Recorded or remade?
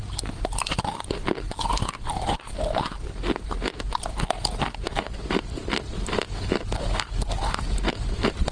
recorded